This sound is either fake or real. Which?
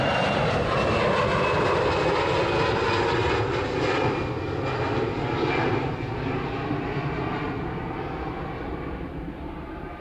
real